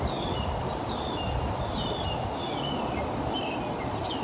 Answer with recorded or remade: recorded